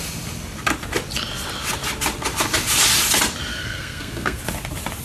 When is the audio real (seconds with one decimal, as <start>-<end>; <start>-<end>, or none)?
0.0-3.5; 4.4-5.0